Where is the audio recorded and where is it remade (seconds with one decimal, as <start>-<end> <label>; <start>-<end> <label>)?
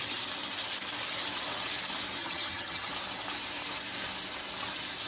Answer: 0.0-2.2 recorded; 2.2-2.9 remade; 2.9-5.1 recorded